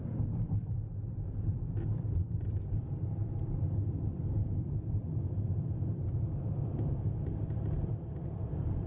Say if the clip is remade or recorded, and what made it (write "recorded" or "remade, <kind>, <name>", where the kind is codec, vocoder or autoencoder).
remade, vocoder, BigVGAN v2